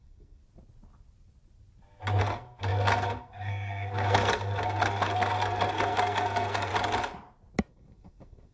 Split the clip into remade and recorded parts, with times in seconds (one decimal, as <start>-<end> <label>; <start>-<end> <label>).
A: 0.0-0.4 remade; 0.4-2.2 recorded; 2.2-6.7 remade; 6.7-7.7 recorded; 7.7-8.5 remade